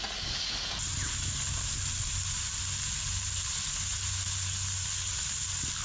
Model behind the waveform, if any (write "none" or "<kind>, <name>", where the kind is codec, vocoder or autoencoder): none